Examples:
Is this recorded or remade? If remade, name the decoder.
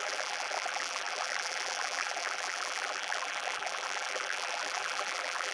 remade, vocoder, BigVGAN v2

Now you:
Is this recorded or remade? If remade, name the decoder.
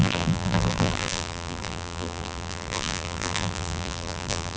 remade, vocoder, BigVGAN v2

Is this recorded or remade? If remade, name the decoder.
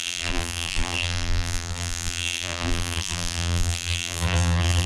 remade, vocoder, BigVGAN v2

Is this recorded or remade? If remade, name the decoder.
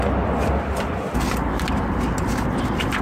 recorded